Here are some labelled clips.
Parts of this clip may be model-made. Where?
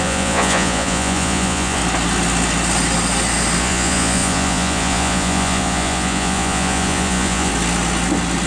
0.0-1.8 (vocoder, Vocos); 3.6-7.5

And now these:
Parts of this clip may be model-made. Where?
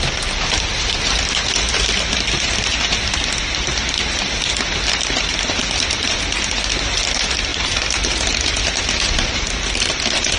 0.7-1.7 (vocoder, BigVGAN v2)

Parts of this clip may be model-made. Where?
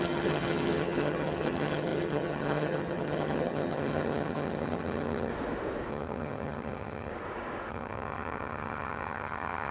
0.0-5.3 (vocoder, HiFi-GAN); 5.9-7.1; 7.7-9.7